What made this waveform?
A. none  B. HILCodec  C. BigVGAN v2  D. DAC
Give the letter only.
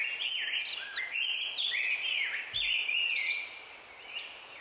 A